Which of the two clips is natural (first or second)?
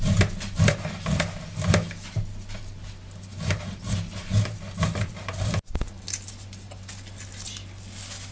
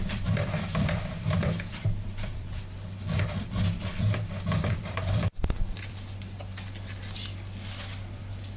first